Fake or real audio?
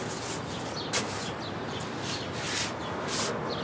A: real